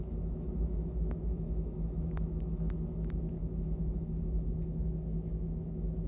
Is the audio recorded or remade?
remade